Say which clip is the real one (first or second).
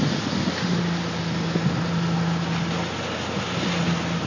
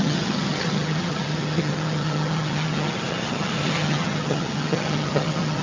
first